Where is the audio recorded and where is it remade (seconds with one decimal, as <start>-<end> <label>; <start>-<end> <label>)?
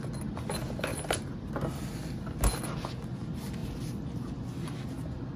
0.0-0.9 recorded; 0.9-1.8 remade; 1.8-5.4 recorded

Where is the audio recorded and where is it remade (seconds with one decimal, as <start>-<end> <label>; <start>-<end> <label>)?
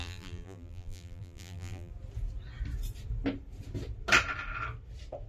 0.0-1.9 remade; 1.9-5.3 recorded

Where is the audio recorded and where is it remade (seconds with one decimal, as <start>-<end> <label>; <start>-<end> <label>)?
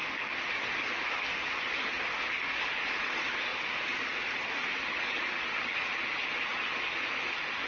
0.0-7.7 recorded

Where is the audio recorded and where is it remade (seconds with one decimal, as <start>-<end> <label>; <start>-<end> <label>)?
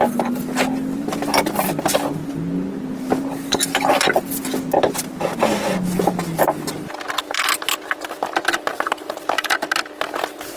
0.0-8.7 recorded; 8.7-9.7 remade; 9.7-10.6 recorded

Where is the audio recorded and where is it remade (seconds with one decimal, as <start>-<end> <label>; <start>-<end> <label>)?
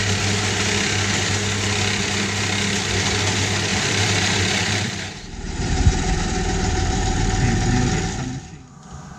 0.0-3.7 recorded; 3.7-7.2 remade; 7.2-9.2 recorded